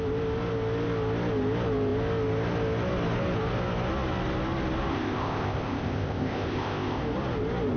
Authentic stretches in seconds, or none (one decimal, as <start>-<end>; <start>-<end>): 0.0-4.9; 7.0-7.8